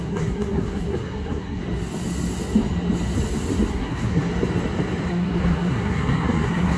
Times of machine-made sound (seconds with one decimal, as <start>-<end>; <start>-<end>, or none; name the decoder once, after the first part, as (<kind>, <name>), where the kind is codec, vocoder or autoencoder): 0.0-1.6 (codec, SNAC); 3.7-4.3; 5.1-6.8